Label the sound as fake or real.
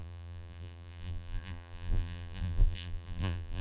fake